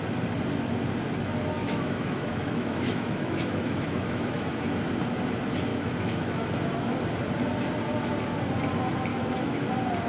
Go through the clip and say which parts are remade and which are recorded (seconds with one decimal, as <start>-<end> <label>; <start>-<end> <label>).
0.0-1.6 recorded; 1.6-4.9 remade; 4.9-5.7 recorded; 5.7-6.9 remade; 6.9-9.1 recorded; 9.1-9.7 remade; 9.7-10.1 recorded